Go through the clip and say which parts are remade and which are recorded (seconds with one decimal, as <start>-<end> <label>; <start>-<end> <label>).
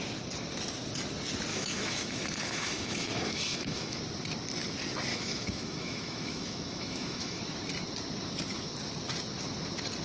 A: 0.0-1.5 recorded; 1.5-4.0 remade; 4.0-5.1 recorded; 5.1-7.4 remade; 7.4-10.0 recorded